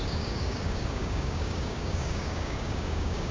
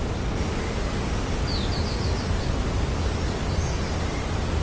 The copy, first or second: first